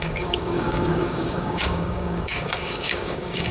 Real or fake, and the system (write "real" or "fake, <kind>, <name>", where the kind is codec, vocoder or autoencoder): fake, codec, DAC